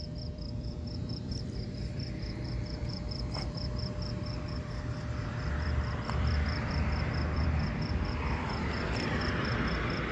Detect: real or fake fake